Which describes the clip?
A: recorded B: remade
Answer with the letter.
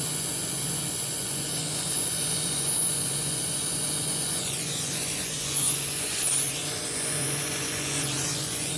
B